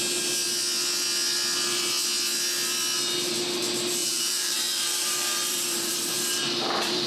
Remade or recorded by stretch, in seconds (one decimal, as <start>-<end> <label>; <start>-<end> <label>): 0.0-4.0 recorded; 4.0-7.1 remade